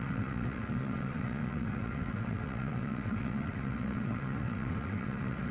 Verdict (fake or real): fake